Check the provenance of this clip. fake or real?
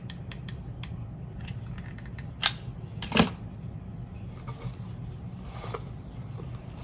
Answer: real